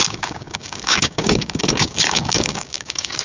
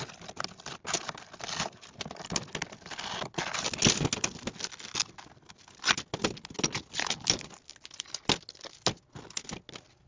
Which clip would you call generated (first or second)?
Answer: first